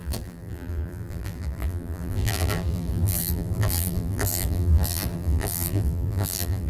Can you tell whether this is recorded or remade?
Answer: remade